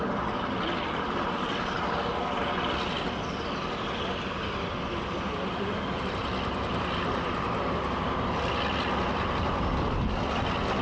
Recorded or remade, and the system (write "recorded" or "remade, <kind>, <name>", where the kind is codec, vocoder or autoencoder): recorded